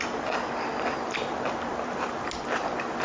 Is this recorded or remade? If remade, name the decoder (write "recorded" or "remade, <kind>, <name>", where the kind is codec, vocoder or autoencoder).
recorded